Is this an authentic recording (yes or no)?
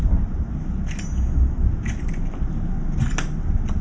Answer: yes